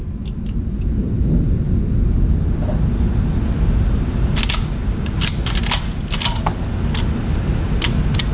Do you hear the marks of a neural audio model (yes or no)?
no